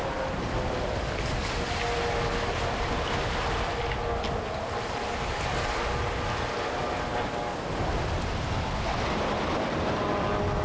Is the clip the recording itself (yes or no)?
yes